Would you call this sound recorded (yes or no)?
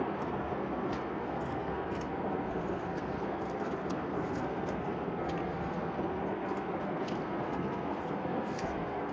no